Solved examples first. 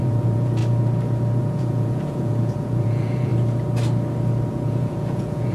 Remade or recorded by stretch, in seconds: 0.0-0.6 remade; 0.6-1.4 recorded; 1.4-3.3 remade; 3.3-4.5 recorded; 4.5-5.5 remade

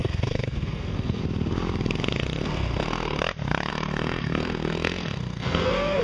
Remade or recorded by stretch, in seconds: 0.0-1.2 remade; 1.2-2.4 recorded; 2.4-3.2 remade; 3.2-3.7 recorded; 3.7-6.0 remade

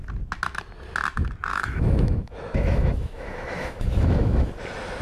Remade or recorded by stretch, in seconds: 0.0-1.5 recorded; 1.5-4.5 remade; 4.5-5.0 recorded

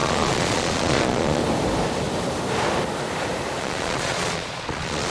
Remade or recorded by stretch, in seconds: 0.0-1.4 remade; 1.4-3.6 recorded; 3.6-5.1 remade

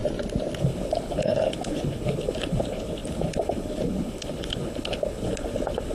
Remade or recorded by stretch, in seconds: 0.0-0.6 recorded; 0.6-5.9 remade

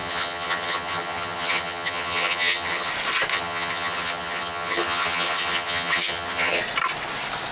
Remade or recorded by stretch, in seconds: 0.0-2.9 remade; 2.9-3.3 recorded; 3.3-6.6 remade; 6.6-7.5 recorded

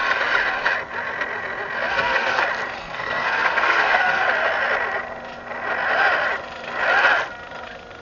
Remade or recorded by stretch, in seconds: 0.0-1.9 recorded; 1.9-2.4 remade; 2.4-2.8 recorded; 2.8-4.2 remade; 4.2-8.0 recorded